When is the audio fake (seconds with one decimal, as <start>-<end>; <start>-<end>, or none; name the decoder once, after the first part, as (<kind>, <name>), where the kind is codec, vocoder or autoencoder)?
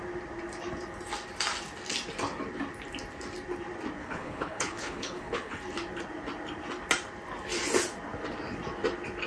4.0-5.6 (codec, HILCodec)